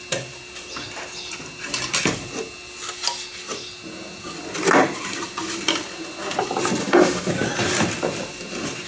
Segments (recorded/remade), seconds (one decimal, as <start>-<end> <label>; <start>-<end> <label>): 0.0-6.8 recorded; 6.8-7.3 remade; 7.3-8.9 recorded